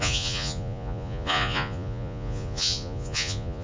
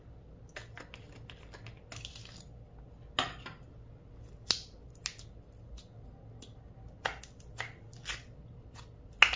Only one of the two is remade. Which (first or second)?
first